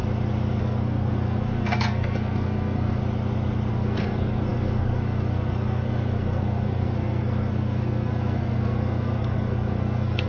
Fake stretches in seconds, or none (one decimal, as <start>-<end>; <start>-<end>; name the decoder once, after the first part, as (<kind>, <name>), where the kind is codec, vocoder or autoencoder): 0.6-3.0 (codec, SNAC); 3.7-10.3